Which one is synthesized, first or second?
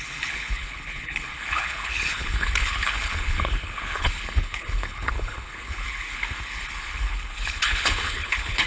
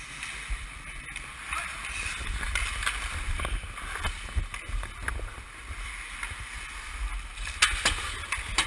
first